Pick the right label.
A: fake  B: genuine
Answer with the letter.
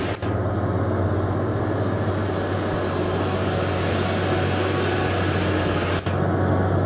B